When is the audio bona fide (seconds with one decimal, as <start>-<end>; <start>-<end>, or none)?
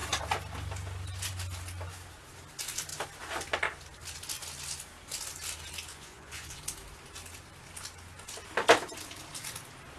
0.0-5.9; 6.6-10.0